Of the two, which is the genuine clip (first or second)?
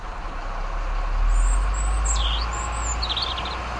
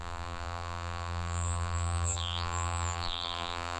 first